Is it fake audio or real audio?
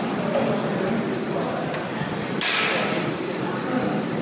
real